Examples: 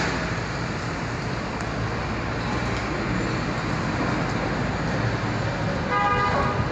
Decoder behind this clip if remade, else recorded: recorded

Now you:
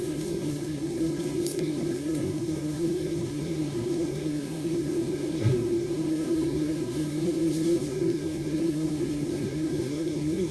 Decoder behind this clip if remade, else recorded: remade, codec, SNAC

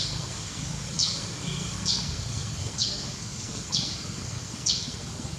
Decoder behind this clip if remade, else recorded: remade, codec, SNAC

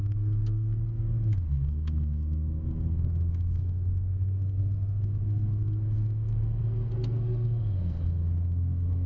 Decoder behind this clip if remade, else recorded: remade, codec, SNAC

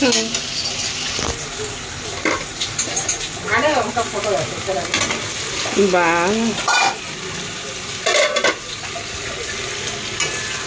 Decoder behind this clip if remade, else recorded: recorded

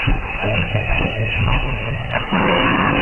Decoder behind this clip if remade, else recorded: remade, codec, SNAC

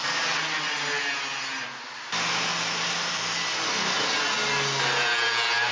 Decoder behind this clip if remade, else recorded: recorded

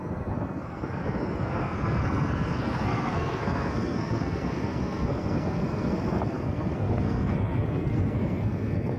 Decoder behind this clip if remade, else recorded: remade, codec, SNAC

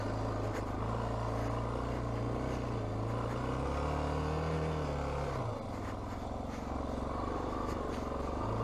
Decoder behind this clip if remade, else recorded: recorded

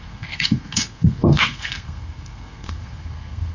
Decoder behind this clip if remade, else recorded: remade, codec, SNAC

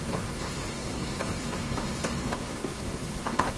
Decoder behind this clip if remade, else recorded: remade, codec, SNAC